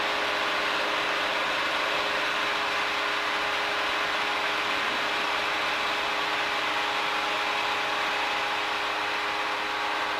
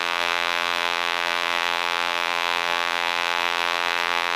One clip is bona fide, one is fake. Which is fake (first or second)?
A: second